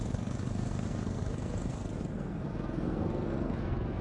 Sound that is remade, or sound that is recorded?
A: remade